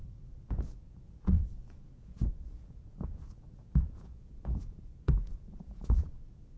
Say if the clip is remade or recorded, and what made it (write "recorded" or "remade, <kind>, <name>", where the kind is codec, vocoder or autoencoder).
remade, vocoder, Vocos